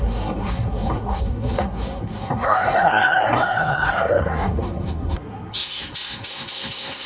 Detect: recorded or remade remade